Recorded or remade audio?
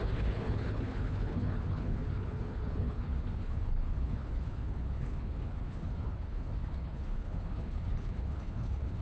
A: remade